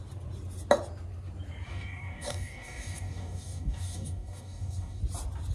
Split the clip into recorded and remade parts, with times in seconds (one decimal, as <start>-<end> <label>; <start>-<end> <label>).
0.0-1.7 recorded; 1.7-5.0 remade; 5.0-5.5 recorded